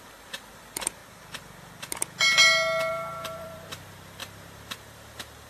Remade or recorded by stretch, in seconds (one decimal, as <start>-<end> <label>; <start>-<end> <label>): 0.0-1.0 remade; 1.0-2.9 recorded; 2.9-5.5 remade